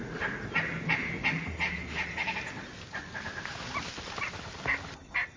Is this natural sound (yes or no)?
yes